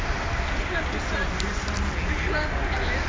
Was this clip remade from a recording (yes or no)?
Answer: no